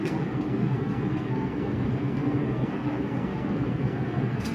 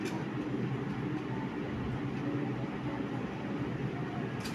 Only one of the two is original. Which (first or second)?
second